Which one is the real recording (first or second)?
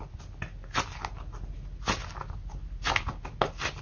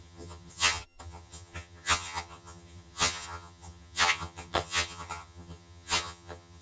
first